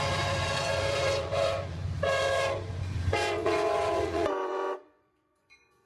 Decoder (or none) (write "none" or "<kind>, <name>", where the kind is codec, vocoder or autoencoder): vocoder, Vocos